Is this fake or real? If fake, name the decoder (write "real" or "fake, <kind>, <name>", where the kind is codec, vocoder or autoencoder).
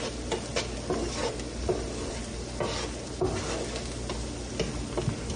real